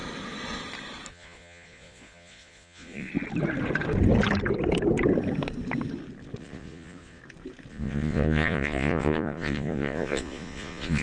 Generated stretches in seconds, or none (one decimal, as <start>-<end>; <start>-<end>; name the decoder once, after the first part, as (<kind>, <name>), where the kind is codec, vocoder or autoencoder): 1.1-3.1 (vocoder, Vocos); 6.4-7.2; 7.7-11.0